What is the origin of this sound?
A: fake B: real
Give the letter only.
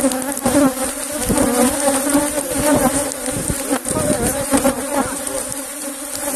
B